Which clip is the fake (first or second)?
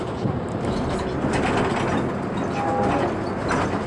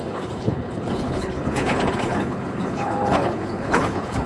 second